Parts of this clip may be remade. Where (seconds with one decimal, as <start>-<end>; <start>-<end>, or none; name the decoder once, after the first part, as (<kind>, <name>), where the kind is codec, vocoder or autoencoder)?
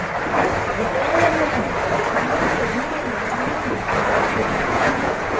4.4-5.4 (vocoder, Vocos)